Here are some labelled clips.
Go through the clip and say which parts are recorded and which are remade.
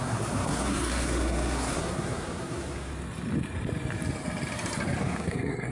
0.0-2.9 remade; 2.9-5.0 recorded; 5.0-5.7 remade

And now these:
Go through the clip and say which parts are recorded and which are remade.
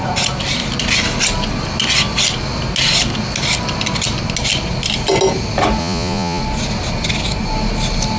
0.0-5.8 recorded; 5.8-6.4 remade; 6.4-8.2 recorded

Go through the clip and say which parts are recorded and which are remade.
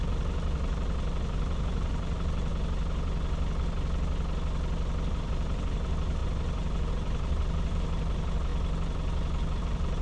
0.0-2.5 remade; 2.5-5.1 recorded; 5.1-8.5 remade; 8.5-9.6 recorded; 9.6-10.0 remade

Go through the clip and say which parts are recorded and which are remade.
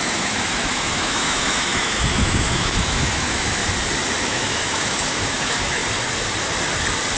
0.0-3.6 remade; 3.6-4.2 recorded; 4.2-5.8 remade; 5.8-7.2 recorded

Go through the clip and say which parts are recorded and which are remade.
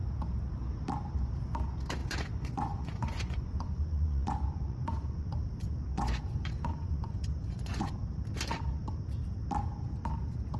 0.0-2.0 recorded; 2.0-5.4 remade; 5.4-5.9 recorded; 5.9-7.9 remade; 7.9-10.6 recorded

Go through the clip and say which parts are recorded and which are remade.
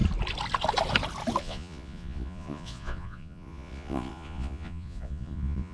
0.0-1.4 recorded; 1.4-5.7 remade